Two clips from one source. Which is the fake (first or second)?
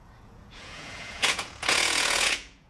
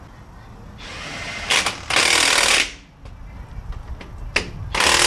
first